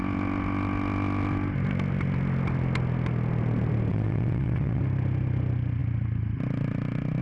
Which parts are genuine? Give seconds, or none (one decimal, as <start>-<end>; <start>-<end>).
0.0-3.9; 4.8-7.2